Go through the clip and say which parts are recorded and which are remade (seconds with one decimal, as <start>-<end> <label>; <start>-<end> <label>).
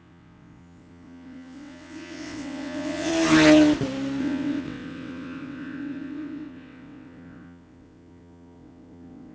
0.0-3.1 remade; 3.1-4.2 recorded; 4.2-9.3 remade